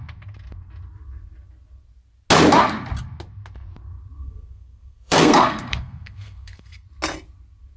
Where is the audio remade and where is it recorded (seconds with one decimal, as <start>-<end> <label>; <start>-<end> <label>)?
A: 0.0-4.2 recorded; 4.2-6.8 remade; 6.8-7.8 recorded